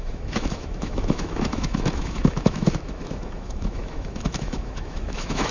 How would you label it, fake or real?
fake